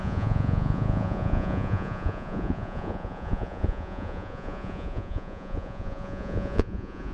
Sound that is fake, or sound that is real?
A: fake